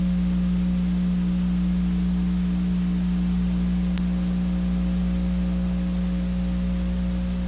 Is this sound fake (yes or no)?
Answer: no